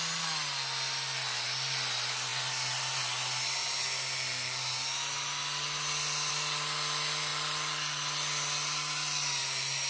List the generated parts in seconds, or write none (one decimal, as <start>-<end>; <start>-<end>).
none